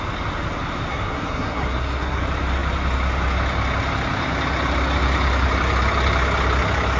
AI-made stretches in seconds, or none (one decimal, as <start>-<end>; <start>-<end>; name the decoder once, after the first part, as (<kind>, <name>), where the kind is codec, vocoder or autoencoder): 0.9-2.2 (codec, SNAC)